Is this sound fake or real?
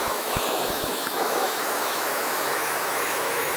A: fake